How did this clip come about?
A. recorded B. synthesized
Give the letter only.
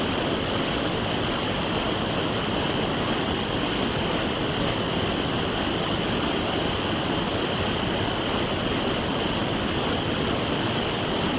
A